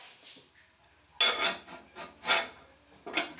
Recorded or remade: recorded